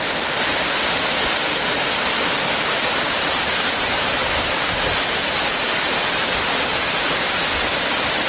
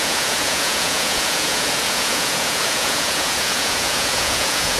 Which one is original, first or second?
first